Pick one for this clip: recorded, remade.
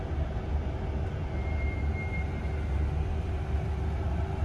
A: recorded